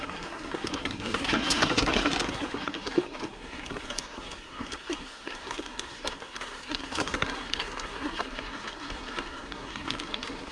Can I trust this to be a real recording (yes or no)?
no